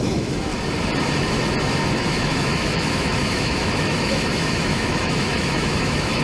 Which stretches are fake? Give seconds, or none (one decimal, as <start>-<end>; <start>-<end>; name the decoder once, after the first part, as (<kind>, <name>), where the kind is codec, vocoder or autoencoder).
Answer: 0.0-0.5 (autoencoder, DAC-VAE); 1.9-6.2